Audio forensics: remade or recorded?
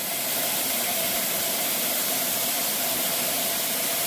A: recorded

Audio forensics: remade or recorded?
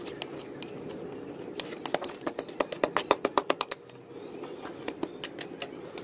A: recorded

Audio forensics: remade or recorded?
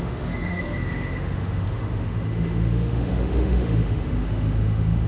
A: remade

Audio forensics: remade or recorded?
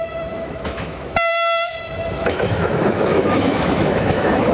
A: remade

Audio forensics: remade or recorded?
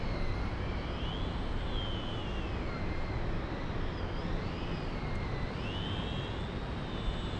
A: recorded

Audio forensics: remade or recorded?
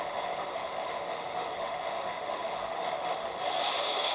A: remade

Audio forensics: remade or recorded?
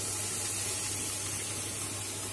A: recorded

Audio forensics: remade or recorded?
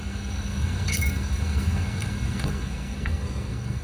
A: remade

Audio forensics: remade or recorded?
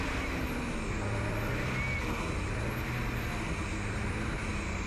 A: recorded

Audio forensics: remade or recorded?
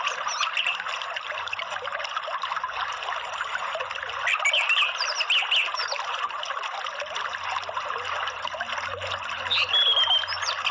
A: recorded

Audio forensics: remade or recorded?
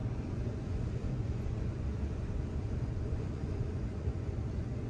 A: remade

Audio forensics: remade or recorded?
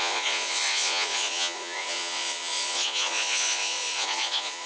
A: remade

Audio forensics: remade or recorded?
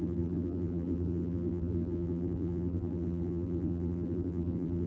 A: remade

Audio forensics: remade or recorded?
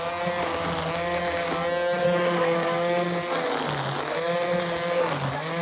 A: recorded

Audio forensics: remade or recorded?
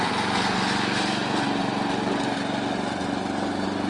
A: recorded